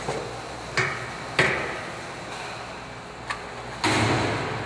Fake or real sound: real